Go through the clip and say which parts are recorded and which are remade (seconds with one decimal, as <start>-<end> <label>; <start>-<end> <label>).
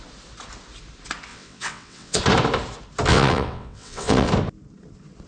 0.0-1.3 recorded; 1.3-2.2 remade; 2.2-3.1 recorded; 3.1-4.3 remade; 4.3-5.3 recorded